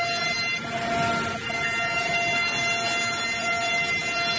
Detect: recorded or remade recorded